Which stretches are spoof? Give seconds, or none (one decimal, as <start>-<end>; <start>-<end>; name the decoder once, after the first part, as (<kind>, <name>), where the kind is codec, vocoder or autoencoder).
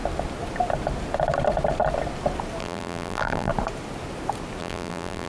2.6-3.5 (vocoder, BigVGAN v2); 4.6-5.3